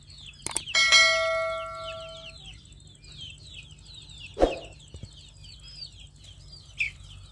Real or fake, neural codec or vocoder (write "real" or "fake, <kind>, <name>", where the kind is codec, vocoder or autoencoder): real